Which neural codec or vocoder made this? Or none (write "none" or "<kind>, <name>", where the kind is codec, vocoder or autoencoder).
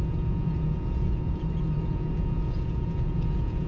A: vocoder, Vocos